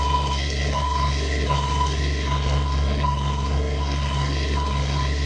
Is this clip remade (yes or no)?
yes